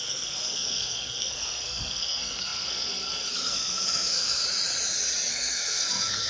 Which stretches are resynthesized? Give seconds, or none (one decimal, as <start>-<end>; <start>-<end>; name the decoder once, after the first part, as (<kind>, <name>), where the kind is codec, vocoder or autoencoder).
0.0-4.4 (codec, SNAC); 5.3-6.3